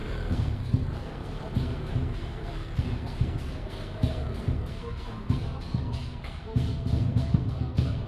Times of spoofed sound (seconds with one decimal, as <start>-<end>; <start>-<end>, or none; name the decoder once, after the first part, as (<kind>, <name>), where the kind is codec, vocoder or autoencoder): 0.0-8.1 (codec, SNAC)